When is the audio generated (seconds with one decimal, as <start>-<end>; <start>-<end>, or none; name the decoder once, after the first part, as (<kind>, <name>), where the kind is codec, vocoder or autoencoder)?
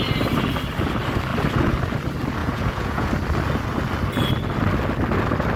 2.4-3.1 (vocoder, Vocos)